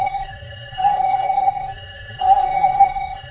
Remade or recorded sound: remade